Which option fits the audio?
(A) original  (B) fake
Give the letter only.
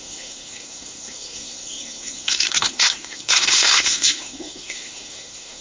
B